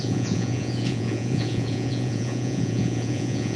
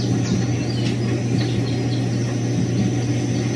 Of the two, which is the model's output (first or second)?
first